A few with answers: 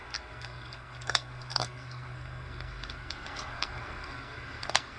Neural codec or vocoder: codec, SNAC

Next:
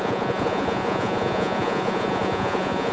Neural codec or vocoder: vocoder, Vocos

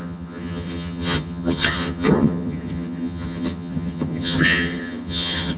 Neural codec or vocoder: vocoder, HiFi-GAN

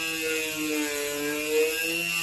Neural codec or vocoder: none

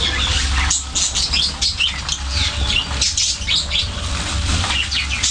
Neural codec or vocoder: none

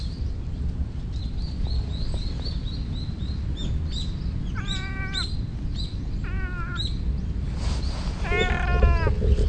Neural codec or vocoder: none